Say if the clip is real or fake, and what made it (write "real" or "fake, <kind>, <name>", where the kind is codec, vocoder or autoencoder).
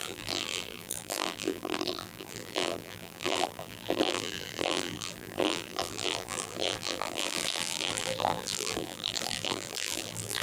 fake, vocoder, BigVGAN v2